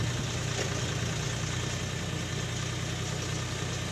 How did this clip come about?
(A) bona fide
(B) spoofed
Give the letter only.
A